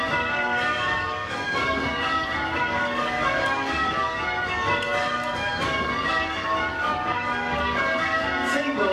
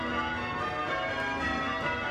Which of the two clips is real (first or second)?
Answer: second